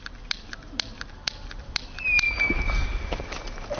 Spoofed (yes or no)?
no